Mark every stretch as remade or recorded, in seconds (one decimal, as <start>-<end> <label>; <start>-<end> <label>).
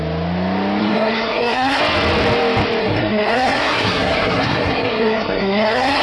0.0-0.8 recorded; 0.8-1.8 remade; 1.8-2.8 recorded; 2.8-6.0 remade